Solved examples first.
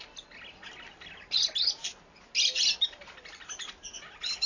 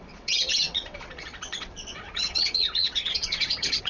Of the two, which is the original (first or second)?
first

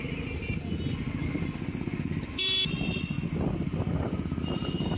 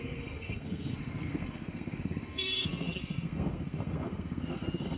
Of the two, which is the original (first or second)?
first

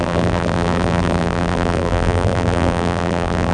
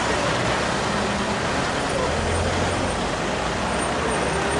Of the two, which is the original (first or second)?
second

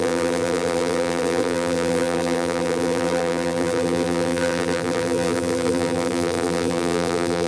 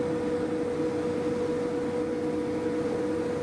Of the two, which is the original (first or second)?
second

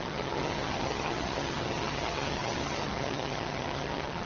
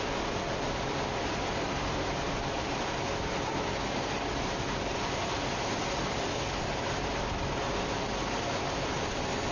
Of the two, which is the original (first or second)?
second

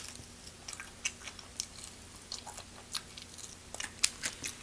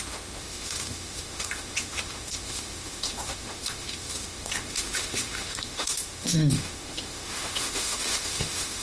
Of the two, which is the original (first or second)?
first